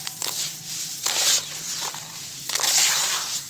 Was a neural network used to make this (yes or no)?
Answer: no